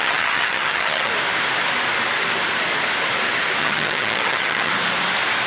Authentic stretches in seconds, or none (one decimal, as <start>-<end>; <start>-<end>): 1.1-3.6; 4.7-5.5